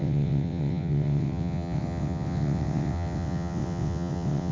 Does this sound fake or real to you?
fake